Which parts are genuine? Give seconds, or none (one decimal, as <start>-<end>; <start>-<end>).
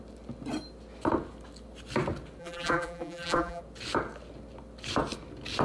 0.0-2.4; 3.6-5.6